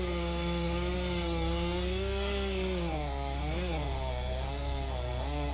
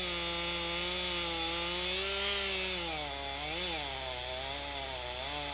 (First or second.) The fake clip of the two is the first